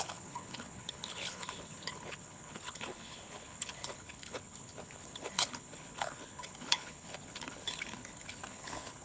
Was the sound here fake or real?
fake